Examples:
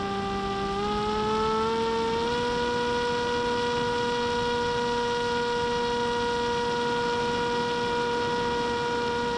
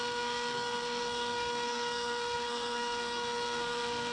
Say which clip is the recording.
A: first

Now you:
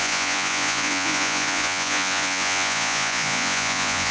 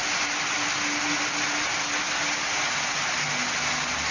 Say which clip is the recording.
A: second